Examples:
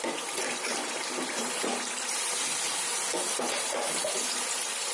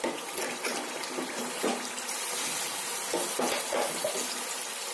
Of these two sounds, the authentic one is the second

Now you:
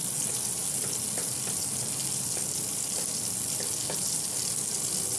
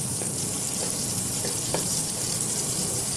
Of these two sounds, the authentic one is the first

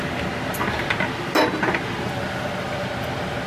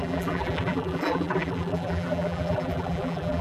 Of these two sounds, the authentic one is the first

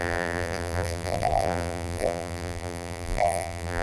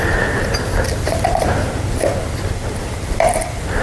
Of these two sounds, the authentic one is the second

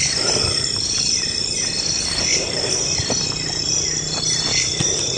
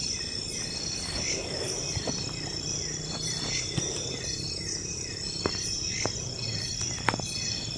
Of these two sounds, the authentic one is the second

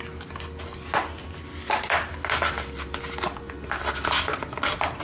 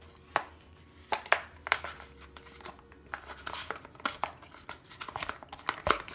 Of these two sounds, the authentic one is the first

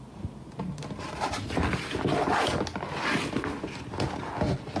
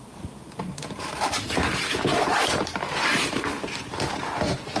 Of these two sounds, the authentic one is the first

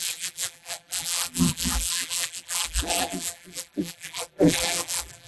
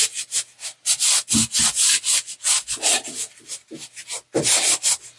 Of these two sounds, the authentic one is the second